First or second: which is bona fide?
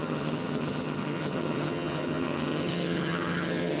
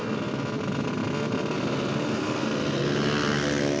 second